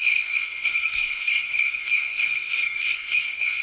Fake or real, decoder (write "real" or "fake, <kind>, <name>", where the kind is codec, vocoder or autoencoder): fake, codec, SNAC